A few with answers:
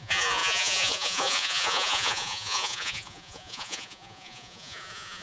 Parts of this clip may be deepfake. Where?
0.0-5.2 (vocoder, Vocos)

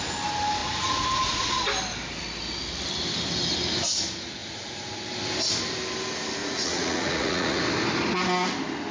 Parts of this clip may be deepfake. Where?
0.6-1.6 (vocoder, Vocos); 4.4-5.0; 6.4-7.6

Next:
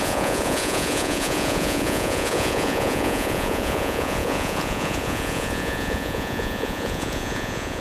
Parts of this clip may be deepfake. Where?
0.0-7.8 (vocoder, Vocos)

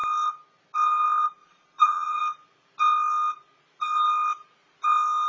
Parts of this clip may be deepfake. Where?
1.4-2.2 (vocoder, Vocos)

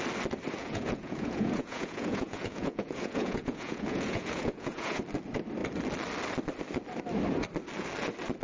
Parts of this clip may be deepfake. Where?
0.6-5.0 (vocoder, Vocos)

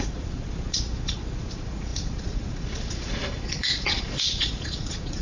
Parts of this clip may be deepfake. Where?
0.0-5.2 (vocoder, Vocos)

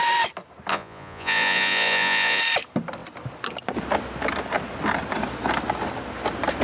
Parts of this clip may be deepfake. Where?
0.7-2.4 (vocoder, Vocos)